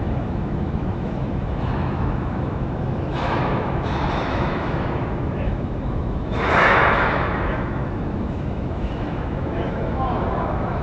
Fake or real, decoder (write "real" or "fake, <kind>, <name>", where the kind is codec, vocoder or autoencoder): fake, autoencoder, DAC-VAE